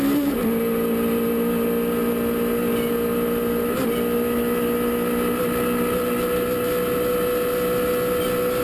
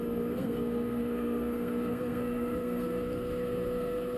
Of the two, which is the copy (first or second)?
second